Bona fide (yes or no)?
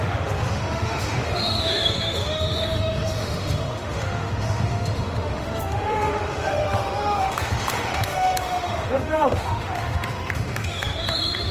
no